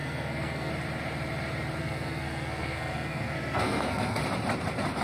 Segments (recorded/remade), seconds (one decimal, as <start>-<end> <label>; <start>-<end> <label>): 0.0-0.7 remade; 0.7-1.8 recorded; 1.8-4.2 remade; 4.2-5.0 recorded